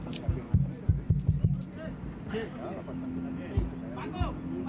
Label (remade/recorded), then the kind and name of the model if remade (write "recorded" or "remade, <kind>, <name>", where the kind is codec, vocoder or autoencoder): recorded